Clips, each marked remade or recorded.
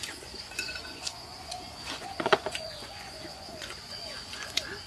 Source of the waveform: remade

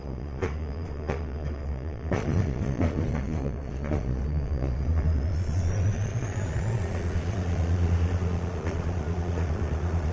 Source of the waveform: remade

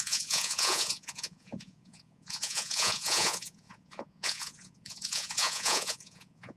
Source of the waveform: remade